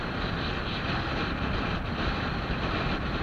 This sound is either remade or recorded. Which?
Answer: recorded